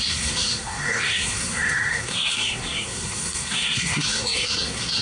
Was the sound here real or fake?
fake